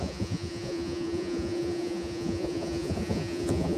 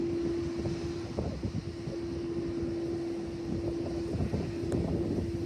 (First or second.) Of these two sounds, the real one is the second